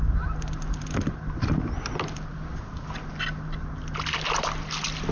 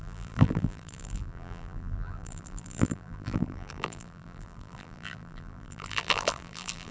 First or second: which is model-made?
second